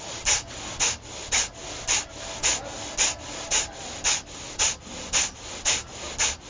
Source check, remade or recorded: recorded